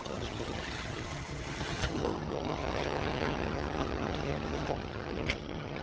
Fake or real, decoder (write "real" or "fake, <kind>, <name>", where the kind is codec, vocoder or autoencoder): fake, vocoder, HiFi-GAN